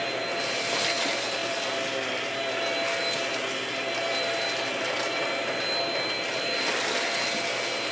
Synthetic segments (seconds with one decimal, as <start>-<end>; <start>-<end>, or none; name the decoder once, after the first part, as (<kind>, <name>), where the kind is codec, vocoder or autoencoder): none

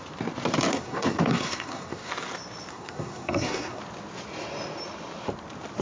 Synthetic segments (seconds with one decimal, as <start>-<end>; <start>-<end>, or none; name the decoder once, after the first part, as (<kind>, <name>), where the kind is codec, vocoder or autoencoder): 0.7-2.1 (codec, SNAC); 2.7-3.8

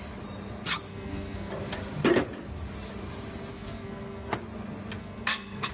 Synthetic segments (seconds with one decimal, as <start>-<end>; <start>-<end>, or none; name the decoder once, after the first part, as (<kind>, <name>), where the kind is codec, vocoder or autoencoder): 0.9-1.5 (codec, SNAC); 3.5-4.3; 5.0-5.7

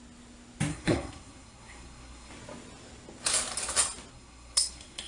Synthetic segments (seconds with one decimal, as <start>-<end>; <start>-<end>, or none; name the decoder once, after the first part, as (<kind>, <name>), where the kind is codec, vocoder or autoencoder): 0.7-2.3 (codec, SNAC); 4.1-5.1

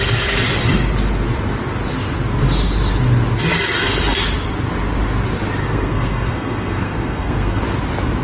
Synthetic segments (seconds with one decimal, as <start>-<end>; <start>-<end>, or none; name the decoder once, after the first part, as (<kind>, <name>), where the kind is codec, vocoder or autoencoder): 5.6-7.6 (codec, SNAC)

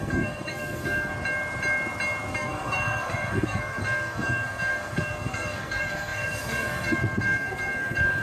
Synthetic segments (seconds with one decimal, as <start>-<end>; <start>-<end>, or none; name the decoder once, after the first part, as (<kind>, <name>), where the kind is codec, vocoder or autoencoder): 0.0-1.1 (codec, SNAC); 2.3-8.2